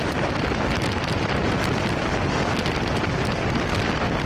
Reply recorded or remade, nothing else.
recorded